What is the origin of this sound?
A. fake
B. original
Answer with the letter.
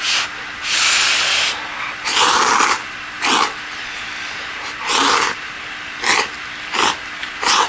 B